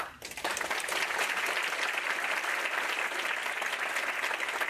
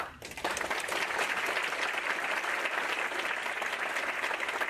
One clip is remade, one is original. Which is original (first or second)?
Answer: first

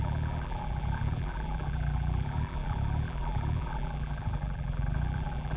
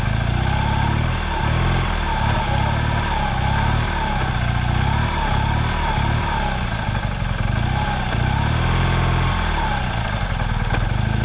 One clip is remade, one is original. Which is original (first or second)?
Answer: second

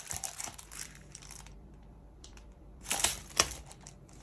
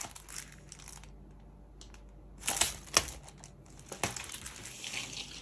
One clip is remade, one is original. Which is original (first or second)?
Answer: second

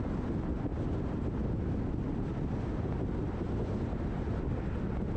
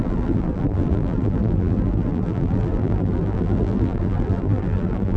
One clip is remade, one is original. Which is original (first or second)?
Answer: first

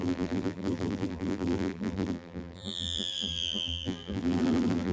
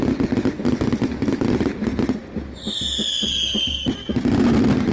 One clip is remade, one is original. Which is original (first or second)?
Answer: second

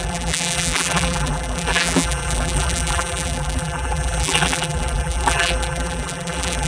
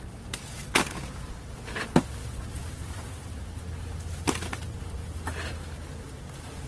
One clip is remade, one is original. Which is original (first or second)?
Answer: second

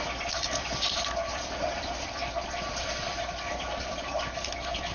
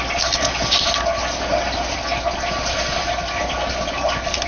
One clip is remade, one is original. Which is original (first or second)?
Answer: second